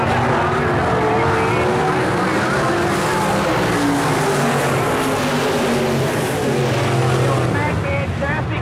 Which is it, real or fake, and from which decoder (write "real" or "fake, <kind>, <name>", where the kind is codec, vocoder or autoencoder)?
real